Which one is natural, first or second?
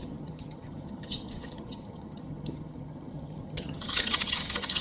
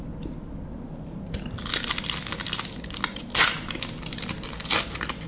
second